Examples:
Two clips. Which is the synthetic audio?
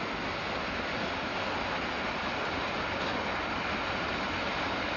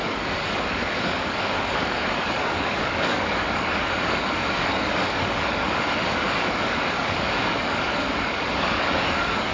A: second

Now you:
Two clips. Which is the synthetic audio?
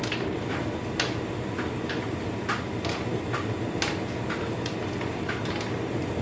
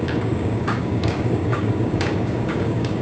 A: second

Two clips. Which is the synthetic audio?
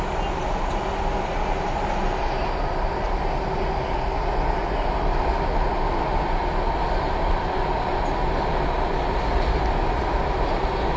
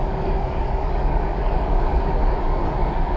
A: second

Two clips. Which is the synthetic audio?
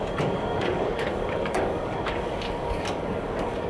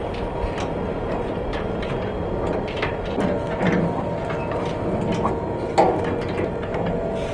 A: first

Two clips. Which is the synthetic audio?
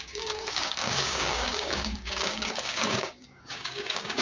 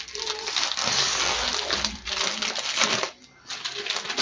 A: first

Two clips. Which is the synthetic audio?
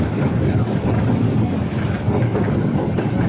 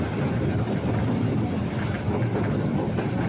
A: first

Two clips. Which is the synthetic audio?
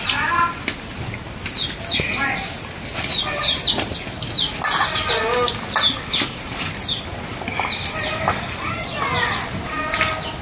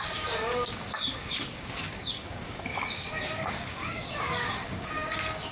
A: second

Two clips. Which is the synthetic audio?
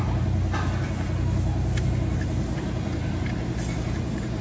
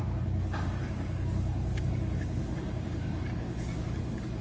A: second